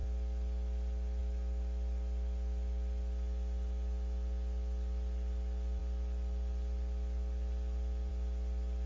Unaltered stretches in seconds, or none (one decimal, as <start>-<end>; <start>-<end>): 0.0-8.9